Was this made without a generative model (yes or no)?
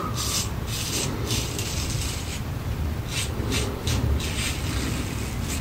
yes